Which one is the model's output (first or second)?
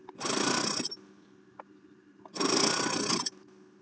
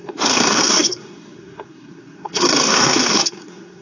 second